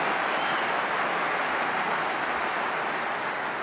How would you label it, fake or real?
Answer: real